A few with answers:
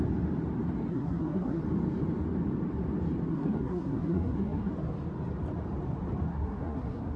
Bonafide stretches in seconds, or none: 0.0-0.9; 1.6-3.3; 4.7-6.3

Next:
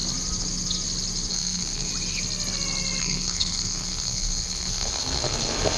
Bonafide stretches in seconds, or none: 0.0-1.3; 1.9-3.0

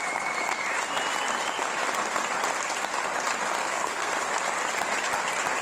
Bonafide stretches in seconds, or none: 0.0-3.6; 4.1-5.6